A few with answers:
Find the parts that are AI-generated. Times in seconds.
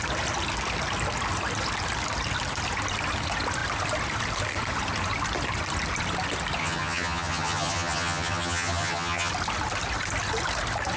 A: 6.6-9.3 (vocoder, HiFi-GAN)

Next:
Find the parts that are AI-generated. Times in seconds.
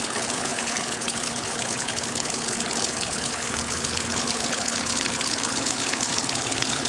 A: 0.0-6.9 (codec, HILCodec)